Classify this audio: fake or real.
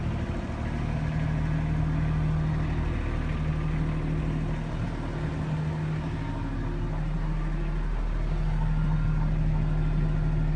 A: real